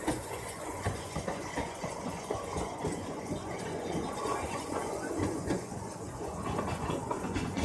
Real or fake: fake